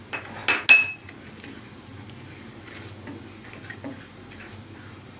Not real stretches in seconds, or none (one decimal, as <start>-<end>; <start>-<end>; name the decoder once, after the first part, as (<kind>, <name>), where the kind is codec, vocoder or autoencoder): none